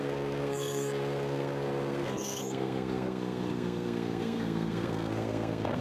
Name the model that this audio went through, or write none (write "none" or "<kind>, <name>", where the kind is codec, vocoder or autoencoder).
codec, SNAC